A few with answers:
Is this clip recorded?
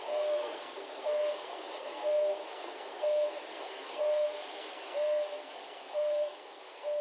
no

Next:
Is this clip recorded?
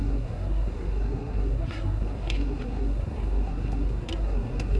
no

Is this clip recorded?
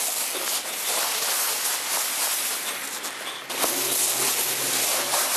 yes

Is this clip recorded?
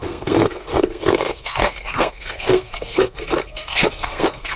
no